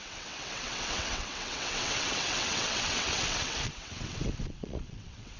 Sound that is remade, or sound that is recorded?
remade